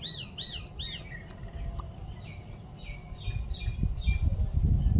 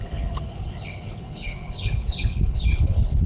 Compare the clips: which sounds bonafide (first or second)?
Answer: first